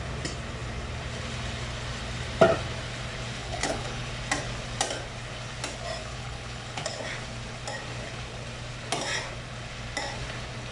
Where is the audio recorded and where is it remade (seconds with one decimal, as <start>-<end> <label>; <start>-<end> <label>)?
0.0-3.4 recorded; 3.4-4.1 remade; 4.1-6.0 recorded; 6.0-7.0 remade; 7.0-10.7 recorded